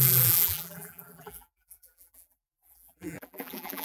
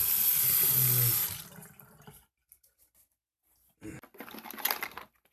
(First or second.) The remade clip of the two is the first